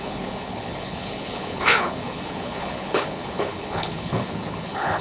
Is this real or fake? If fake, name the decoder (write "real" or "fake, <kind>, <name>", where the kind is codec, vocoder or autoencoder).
fake, codec, HILCodec